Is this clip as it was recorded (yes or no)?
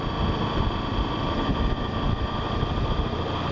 no